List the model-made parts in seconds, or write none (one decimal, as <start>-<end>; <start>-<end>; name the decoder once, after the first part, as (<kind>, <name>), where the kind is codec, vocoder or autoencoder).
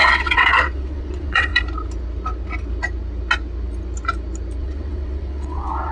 0.0-1.5 (vocoder, WaveNeXt); 4.6-5.9